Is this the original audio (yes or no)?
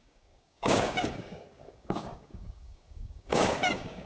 no